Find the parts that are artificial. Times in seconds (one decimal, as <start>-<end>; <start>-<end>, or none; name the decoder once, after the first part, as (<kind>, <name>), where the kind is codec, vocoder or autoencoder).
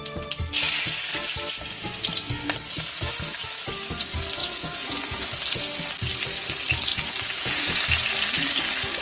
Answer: 4.4-5.3 (vocoder, Vocos); 6.9-7.8